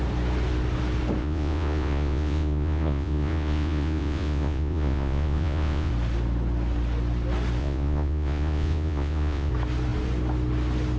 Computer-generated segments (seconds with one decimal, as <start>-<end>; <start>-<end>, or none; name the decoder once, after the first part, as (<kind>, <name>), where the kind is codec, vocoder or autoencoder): 1.2-5.9 (vocoder, Vocos); 7.6-9.5